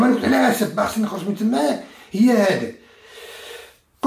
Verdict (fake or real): real